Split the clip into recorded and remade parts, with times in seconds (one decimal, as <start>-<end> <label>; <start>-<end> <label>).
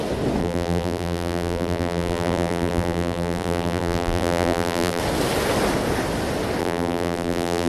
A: 0.0-0.4 recorded; 0.4-5.0 remade; 5.0-6.6 recorded; 6.6-7.7 remade